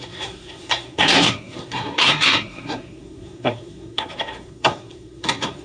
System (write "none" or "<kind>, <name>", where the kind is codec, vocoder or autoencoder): codec, SNAC